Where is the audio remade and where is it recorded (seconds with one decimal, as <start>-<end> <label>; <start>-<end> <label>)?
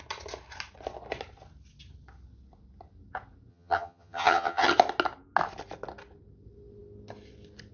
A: 0.0-3.5 recorded; 3.5-4.7 remade; 4.7-7.7 recorded